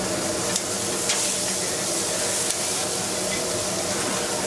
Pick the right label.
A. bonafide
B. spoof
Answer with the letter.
A